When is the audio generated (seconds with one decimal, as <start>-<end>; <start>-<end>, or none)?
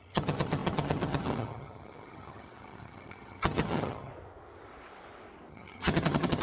0.0-4.1; 5.5-6.4